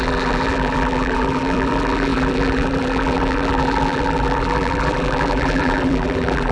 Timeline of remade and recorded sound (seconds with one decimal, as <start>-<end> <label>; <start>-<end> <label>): 0.0-6.5 remade